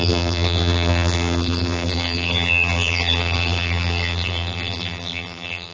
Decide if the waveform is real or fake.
fake